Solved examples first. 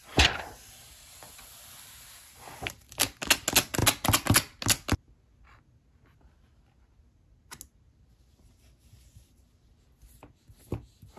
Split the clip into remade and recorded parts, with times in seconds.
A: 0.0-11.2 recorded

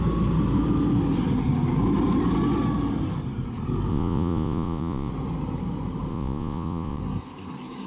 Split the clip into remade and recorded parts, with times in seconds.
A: 0.0-3.9 recorded; 3.9-5.1 remade; 5.1-6.1 recorded; 6.1-7.0 remade; 7.0-7.9 recorded

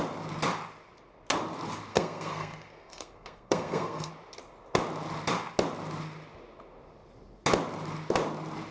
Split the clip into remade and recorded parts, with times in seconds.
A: 0.0-1.9 recorded; 1.9-4.1 remade; 4.1-8.7 recorded

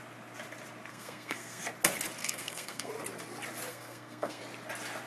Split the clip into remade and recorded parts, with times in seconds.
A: 0.0-0.9 recorded; 0.9-1.6 remade; 1.6-2.2 recorded; 2.2-2.9 remade; 2.9-3.7 recorded; 3.7-4.4 remade; 4.4-5.1 recorded

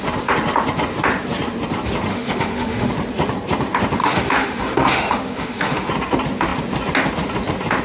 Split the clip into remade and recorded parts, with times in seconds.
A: 0.0-2.1 recorded; 2.1-2.9 remade; 2.9-4.0 recorded; 4.0-5.9 remade; 5.9-7.8 recorded

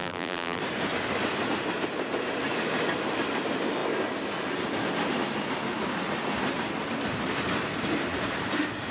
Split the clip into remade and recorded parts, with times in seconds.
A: 0.0-0.6 remade; 0.6-8.9 recorded

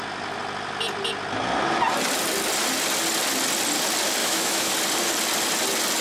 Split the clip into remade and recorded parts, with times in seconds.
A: 0.0-4.2 recorded; 4.2-4.7 remade; 4.7-6.0 recorded

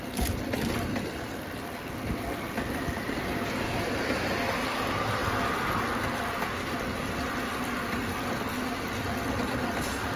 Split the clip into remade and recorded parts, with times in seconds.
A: 0.0-10.2 recorded